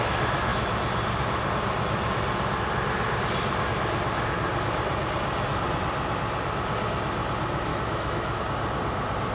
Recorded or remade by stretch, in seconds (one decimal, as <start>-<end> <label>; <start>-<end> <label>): 0.0-7.7 recorded; 7.7-8.4 remade; 8.4-9.3 recorded